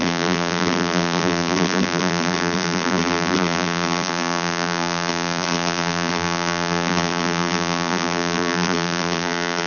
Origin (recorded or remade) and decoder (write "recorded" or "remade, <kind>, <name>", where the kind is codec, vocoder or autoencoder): remade, vocoder, BigVGAN v2